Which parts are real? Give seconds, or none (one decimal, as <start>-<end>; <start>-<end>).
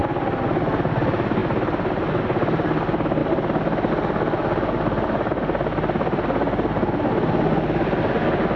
0.0-8.6